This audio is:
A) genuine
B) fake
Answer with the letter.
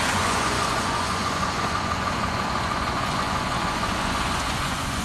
B